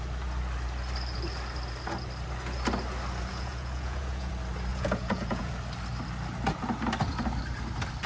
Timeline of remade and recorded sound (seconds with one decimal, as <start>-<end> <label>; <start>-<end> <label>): 0.0-3.3 recorded; 3.3-4.3 remade; 4.3-4.7 recorded; 4.7-5.5 remade; 5.5-8.1 recorded